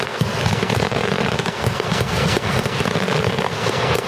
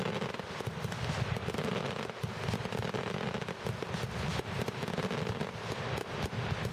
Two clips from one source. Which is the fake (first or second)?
first